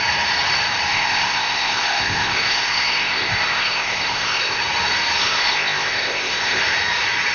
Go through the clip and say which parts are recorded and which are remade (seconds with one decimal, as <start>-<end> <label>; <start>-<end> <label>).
0.0-0.9 recorded; 0.9-4.6 remade; 4.6-5.2 recorded; 5.2-6.6 remade; 6.6-7.3 recorded

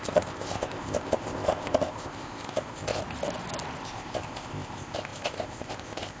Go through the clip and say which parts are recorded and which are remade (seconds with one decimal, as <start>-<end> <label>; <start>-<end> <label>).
0.0-3.0 remade; 3.0-3.8 recorded; 3.8-6.2 remade

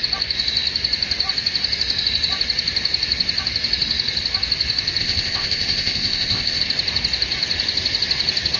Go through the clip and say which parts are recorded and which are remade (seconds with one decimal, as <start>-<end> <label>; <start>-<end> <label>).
0.0-5.0 recorded; 5.0-6.6 remade; 6.6-8.6 recorded

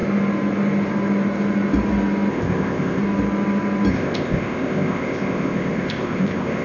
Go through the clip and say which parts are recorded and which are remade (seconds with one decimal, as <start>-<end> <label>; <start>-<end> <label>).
0.0-2.3 recorded; 2.3-3.0 remade; 3.0-3.9 recorded; 3.9-6.6 remade

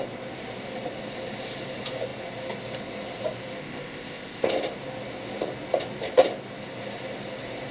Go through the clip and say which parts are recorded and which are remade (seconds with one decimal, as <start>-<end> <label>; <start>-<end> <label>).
0.0-3.6 recorded; 3.6-4.5 remade; 4.5-7.7 recorded

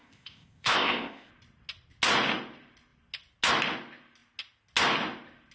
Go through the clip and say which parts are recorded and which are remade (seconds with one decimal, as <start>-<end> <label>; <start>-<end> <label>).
0.0-1.3 remade; 1.3-5.5 recorded